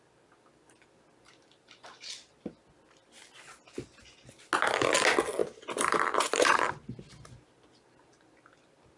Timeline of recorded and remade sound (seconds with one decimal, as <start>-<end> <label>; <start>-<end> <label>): 0.0-5.4 recorded; 5.4-6.7 remade; 6.7-9.0 recorded